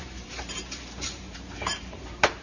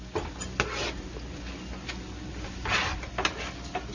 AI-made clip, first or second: first